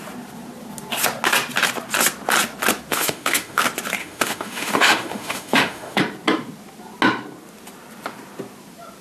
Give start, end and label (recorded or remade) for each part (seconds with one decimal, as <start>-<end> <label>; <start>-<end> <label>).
0.0-2.9 recorded; 2.9-3.6 remade; 3.6-4.0 recorded; 4.0-6.0 remade; 6.0-9.0 recorded